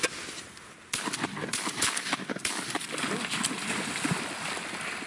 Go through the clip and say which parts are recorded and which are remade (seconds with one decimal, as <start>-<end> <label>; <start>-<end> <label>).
0.0-1.4 recorded; 1.4-4.5 remade; 4.5-5.1 recorded